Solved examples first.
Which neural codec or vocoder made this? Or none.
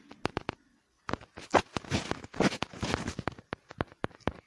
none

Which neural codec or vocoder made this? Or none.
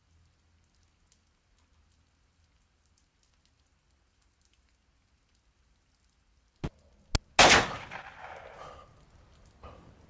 none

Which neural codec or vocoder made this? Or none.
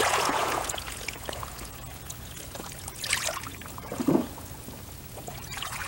vocoder, Vocos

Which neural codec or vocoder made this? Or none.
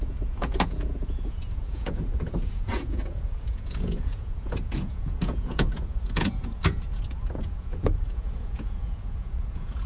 vocoder, Vocos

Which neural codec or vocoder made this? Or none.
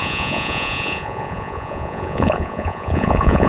vocoder, Vocos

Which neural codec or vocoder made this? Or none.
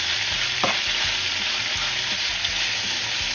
none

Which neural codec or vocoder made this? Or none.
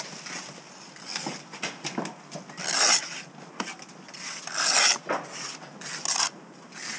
none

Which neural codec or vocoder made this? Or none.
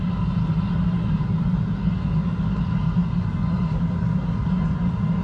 none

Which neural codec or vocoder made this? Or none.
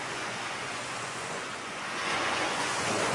vocoder, Vocos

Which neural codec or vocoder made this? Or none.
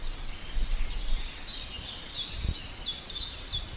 none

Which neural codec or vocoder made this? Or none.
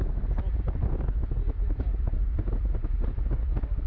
none